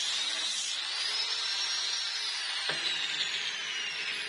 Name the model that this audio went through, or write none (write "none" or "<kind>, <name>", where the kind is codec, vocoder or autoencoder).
none